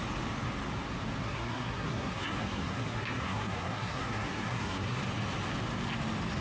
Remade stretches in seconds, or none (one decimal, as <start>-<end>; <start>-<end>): 1.2-5.0

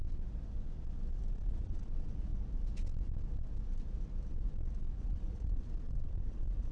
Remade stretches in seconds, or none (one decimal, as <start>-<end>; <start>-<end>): 1.3-2.3; 5.0-6.7

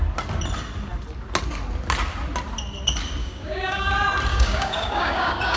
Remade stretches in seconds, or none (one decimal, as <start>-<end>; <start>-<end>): 3.2-3.9; 4.3-5.6

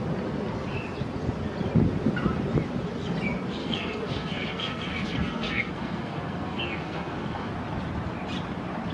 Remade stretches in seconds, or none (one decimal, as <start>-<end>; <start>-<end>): 3.6-7.5

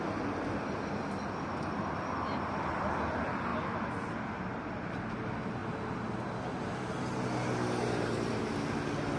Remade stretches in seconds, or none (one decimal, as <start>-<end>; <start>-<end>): none

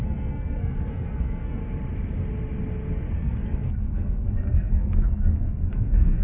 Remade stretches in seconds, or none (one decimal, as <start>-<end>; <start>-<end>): 0.0-1.6; 3.1-6.2